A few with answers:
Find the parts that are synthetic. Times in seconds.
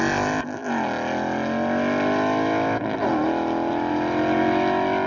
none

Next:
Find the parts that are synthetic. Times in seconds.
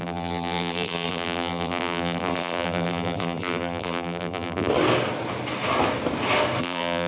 0.0-4.7 (vocoder, BigVGAN v2); 6.6-7.1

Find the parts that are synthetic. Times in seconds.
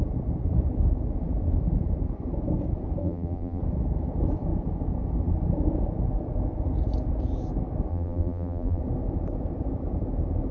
3.0-3.6 (vocoder, BigVGAN v2); 7.9-8.8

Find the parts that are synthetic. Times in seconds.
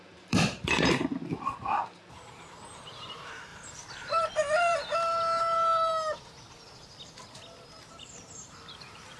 0.0-1.1 (vocoder, BigVGAN v2); 2.0-5.9; 7.7-9.2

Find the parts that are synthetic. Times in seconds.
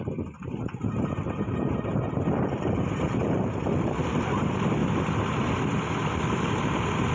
0.0-1.9 (vocoder, BigVGAN v2); 2.5-4.8; 6.2-7.1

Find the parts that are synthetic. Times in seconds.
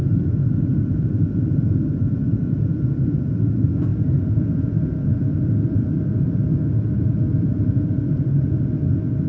0.4-2.8 (vocoder, BigVGAN v2); 3.9-4.5; 5.1-7.6